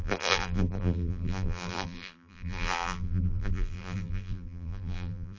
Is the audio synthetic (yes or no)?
yes